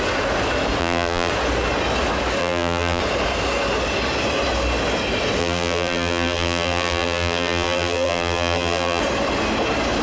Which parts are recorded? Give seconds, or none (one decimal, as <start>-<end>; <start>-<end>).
0.0-0.8; 1.3-2.4; 3.0-5.4; 9.0-10.0